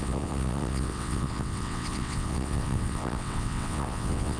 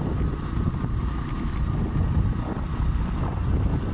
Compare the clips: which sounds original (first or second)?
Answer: second